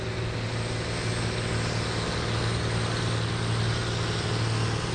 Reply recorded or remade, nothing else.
recorded